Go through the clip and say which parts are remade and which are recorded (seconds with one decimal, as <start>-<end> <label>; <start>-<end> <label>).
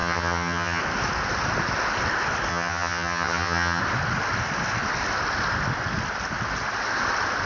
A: 0.0-0.8 remade; 0.8-2.5 recorded; 2.5-3.8 remade; 3.8-7.5 recorded